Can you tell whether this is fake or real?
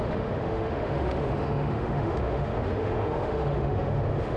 fake